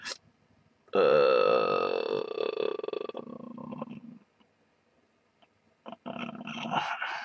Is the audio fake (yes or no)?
no